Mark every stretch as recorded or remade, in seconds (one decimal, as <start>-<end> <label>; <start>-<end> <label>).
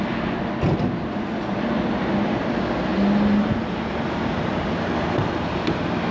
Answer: 0.0-6.1 recorded